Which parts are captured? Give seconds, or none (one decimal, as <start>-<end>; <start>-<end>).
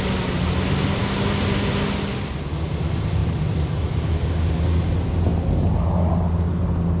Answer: 0.0-7.0